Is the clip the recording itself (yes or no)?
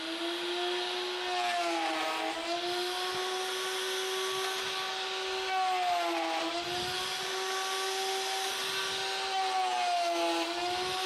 yes